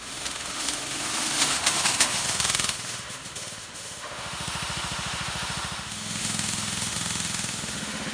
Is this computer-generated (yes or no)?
yes